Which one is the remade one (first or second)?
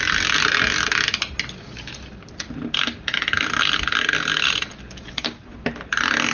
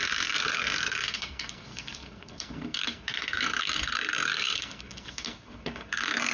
second